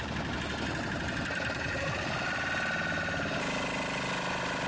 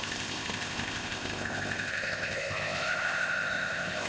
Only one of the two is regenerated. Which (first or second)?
second